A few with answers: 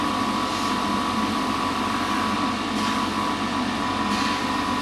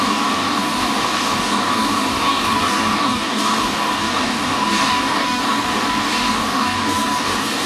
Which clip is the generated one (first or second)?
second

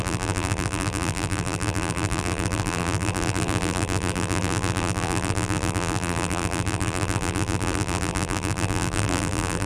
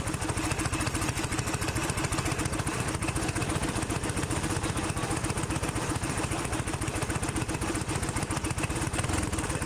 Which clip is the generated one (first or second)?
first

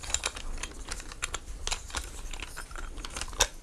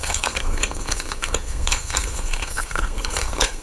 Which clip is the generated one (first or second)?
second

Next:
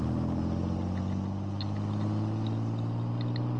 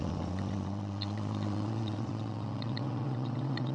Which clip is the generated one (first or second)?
second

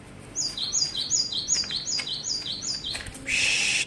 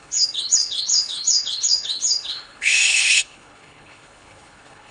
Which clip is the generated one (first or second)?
second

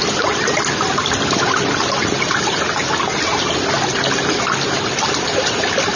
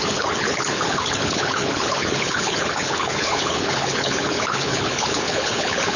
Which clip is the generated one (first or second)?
second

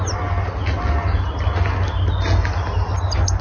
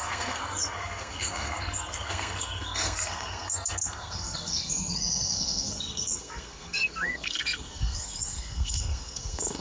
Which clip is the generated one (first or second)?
second